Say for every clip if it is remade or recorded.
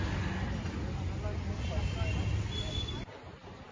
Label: recorded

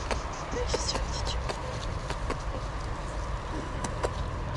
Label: recorded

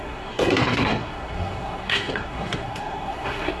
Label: remade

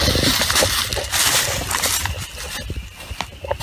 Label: recorded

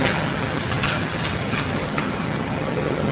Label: remade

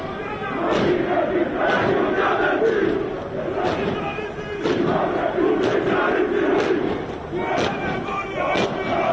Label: recorded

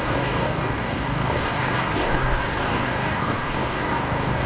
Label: remade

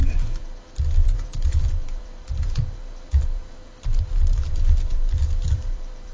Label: remade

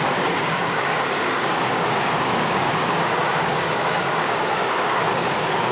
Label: remade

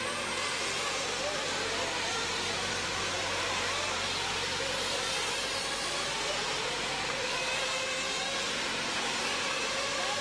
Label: remade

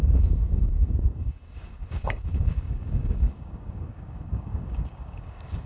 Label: remade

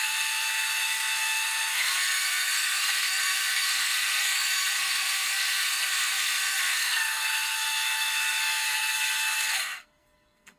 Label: remade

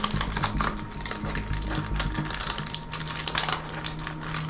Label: recorded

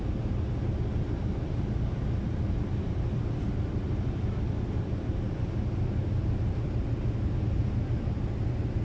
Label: recorded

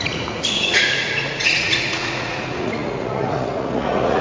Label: remade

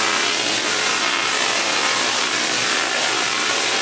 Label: recorded